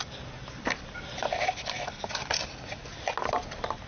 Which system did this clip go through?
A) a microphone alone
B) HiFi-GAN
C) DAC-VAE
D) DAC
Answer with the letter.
A